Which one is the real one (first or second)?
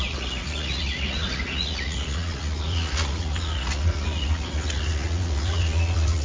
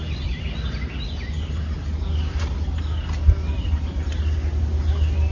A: second